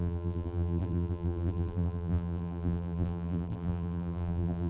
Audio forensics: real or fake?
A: fake